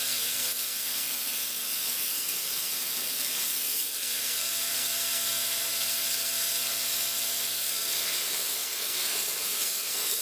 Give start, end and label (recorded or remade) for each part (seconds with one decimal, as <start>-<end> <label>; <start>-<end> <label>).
0.0-10.2 remade